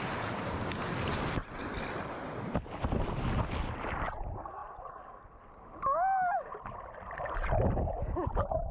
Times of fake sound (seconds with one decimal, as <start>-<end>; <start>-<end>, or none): none